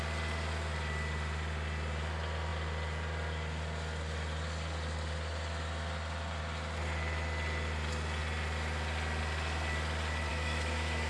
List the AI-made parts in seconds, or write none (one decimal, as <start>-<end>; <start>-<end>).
10.3-11.1